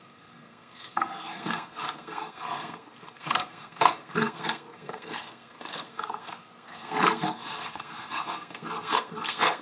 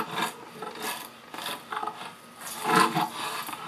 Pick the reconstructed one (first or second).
first